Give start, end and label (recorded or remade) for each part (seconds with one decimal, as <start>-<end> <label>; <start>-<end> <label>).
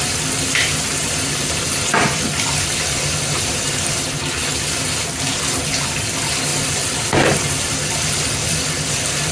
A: 0.0-9.3 recorded